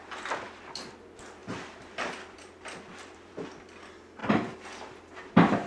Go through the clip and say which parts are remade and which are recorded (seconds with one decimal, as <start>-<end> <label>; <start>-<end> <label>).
0.0-5.7 recorded